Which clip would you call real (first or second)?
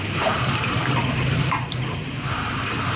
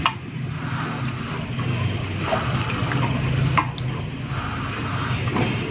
second